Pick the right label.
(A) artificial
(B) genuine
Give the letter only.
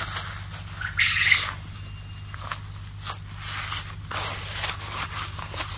B